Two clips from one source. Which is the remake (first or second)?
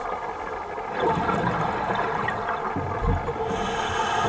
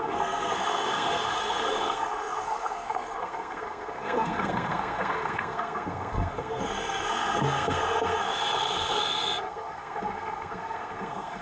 second